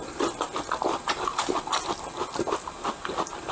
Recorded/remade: recorded